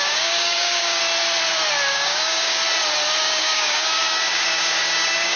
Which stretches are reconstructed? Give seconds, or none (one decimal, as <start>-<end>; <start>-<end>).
0.0-1.0; 1.9-2.6; 3.2-5.4